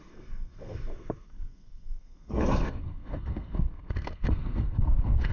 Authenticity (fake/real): fake